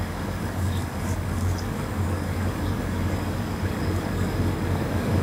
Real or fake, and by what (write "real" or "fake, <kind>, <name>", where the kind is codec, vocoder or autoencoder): fake, codec, DAC